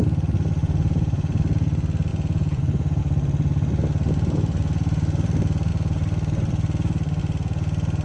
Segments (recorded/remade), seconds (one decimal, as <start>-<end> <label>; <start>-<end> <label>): 0.0-0.6 recorded; 0.6-1.4 remade; 1.4-2.1 recorded; 2.1-3.0 remade; 3.0-8.0 recorded